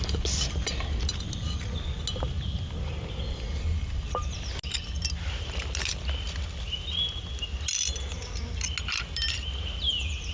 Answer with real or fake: real